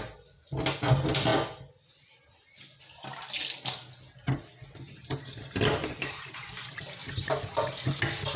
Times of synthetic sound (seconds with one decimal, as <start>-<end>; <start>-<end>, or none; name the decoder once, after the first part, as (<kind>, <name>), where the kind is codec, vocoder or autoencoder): 5.8-6.4 (vocoder, BigVGAN v2)